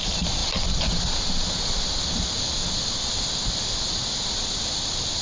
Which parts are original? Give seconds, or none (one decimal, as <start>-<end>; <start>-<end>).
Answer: 0.0-5.2